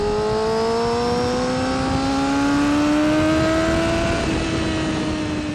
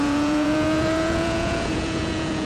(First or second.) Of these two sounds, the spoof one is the second